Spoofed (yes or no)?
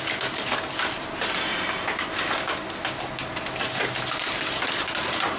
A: no